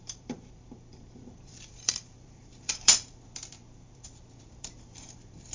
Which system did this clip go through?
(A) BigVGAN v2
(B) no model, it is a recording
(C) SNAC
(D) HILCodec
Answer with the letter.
A